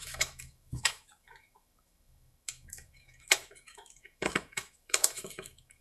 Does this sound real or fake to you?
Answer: fake